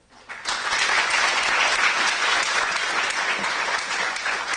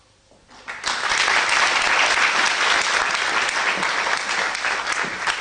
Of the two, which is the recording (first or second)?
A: second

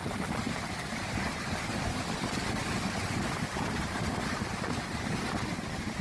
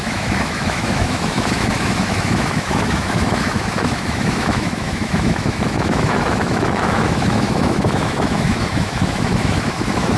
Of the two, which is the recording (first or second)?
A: first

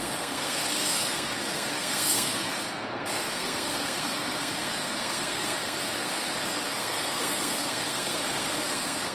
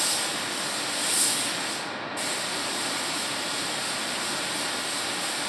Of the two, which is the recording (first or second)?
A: second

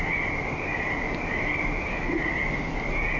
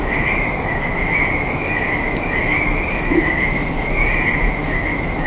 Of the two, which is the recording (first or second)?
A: first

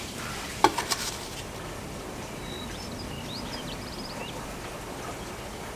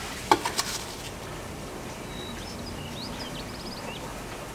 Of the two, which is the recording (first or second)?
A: second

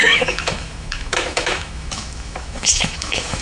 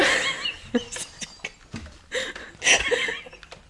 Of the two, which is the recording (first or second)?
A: second